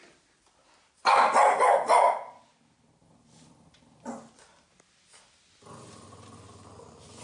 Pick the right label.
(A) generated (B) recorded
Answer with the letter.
B